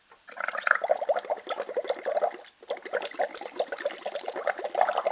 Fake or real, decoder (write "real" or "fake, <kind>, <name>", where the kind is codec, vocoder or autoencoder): real